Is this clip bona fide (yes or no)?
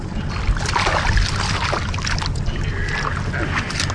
yes